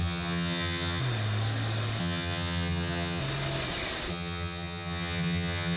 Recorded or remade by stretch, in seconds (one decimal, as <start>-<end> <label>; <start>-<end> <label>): 0.0-1.0 remade; 1.0-2.0 recorded; 2.0-3.2 remade; 3.2-4.1 recorded; 4.1-5.8 remade